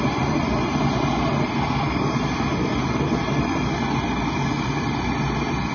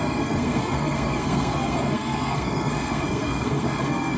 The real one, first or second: first